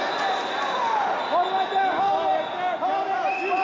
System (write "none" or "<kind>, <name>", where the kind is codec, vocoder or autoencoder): none